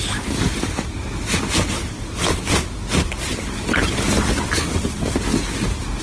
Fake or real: real